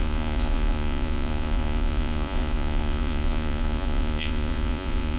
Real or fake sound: fake